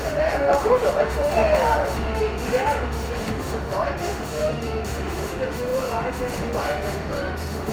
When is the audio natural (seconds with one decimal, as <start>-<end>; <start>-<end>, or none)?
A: none